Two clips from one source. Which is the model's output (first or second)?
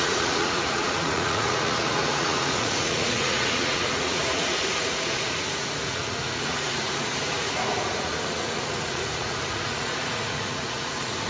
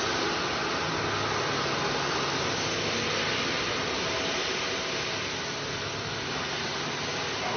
first